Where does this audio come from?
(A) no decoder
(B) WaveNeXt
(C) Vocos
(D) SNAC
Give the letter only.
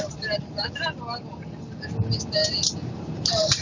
A